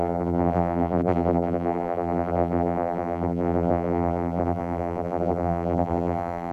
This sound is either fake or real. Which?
fake